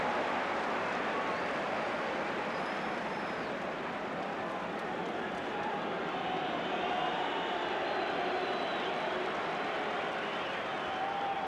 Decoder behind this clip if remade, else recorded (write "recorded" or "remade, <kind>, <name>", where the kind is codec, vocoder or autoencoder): remade, vocoder, BigVGAN v2